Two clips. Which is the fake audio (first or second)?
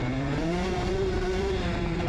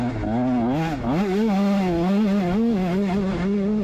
first